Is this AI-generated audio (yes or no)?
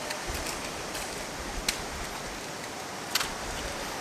no